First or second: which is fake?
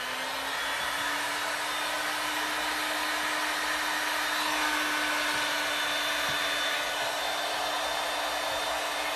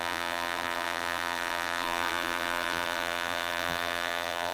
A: second